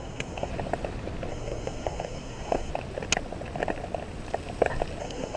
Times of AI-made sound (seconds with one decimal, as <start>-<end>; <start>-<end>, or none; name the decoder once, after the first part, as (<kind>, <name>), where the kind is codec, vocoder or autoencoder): 0.0-0.5 (codec, SNAC); 1.3-2.7; 5.0-5.4